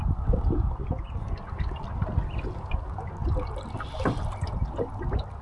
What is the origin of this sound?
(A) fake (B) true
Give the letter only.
B